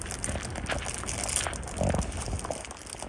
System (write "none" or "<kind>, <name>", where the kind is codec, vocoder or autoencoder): none